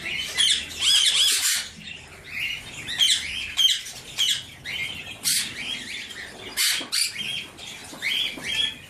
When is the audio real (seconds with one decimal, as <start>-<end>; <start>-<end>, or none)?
0.0-1.5; 2.1-8.9